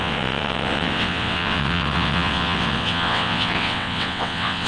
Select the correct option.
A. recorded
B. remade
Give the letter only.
B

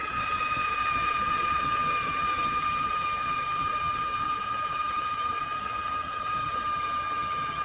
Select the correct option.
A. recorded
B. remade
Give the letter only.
B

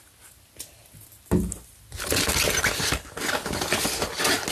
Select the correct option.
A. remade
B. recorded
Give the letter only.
B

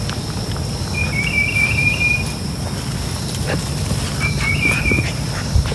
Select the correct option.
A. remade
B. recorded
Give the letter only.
B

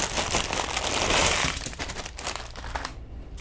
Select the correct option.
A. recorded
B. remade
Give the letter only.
A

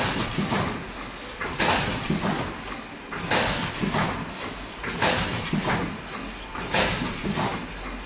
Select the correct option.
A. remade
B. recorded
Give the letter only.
B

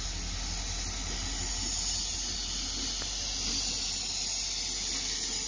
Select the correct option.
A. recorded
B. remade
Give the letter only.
A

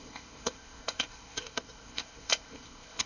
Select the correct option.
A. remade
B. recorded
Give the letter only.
A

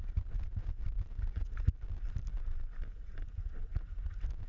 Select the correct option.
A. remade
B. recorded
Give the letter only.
B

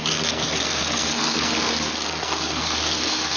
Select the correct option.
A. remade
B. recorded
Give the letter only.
A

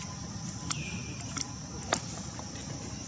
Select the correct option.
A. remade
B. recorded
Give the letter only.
B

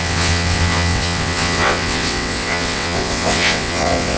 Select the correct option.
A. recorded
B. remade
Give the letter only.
B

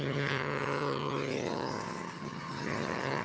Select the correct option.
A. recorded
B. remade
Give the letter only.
B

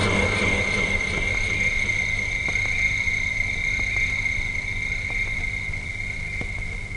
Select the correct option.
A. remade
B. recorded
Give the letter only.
B